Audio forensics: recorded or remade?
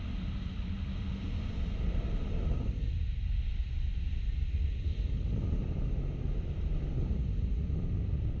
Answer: recorded